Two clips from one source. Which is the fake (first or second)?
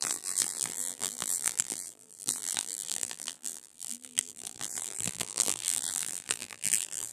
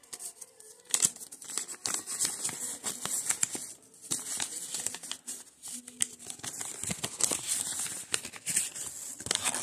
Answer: first